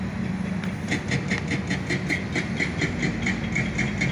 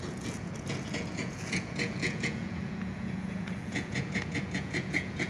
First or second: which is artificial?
second